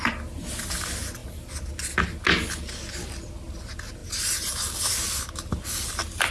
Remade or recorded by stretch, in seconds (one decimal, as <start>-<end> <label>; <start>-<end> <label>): 0.0-6.3 recorded